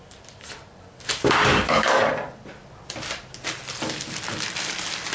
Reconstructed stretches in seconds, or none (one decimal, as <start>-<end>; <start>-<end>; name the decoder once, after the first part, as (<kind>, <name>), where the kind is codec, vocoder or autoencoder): 1.5-2.1 (codec, DAC)